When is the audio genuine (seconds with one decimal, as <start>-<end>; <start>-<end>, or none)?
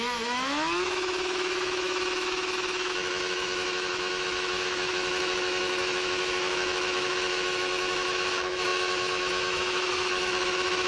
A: none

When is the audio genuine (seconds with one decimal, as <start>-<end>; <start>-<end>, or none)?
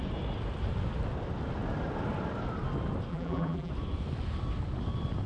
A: 0.0-3.1; 3.7-5.3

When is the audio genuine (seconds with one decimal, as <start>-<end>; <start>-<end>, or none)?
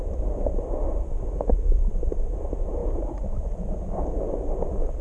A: 0.0-5.0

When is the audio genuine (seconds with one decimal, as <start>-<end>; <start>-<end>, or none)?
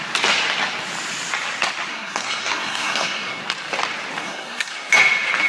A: 0.0-1.9; 3.4-4.2; 4.9-5.5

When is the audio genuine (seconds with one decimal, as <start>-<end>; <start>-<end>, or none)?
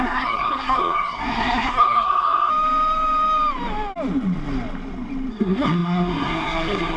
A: 2.5-5.3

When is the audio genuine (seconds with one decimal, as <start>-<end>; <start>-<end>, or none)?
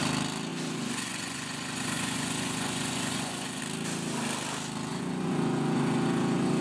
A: 0.0-0.5; 3.6-4.9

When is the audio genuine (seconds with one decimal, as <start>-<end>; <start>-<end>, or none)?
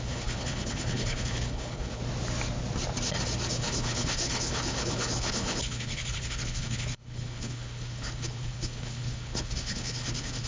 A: 2.0-3.5